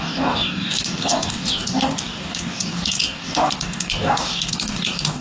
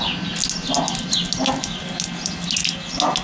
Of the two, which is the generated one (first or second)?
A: first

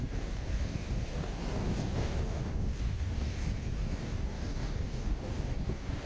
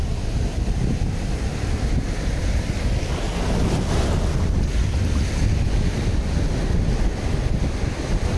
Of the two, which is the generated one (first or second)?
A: first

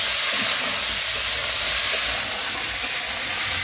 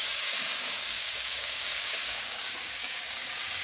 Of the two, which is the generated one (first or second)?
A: second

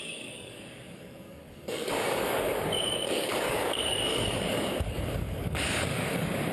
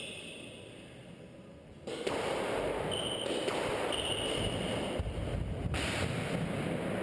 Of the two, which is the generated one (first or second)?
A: first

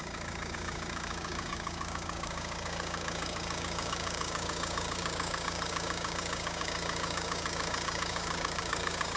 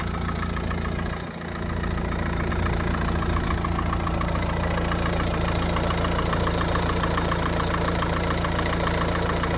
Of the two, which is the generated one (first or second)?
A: first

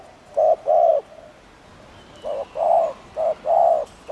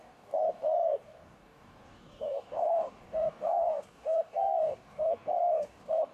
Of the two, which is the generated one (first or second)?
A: second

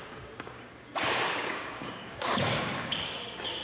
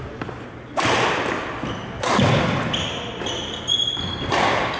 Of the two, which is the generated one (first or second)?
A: first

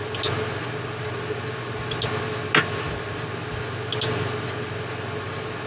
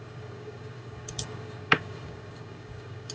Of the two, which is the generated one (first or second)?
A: second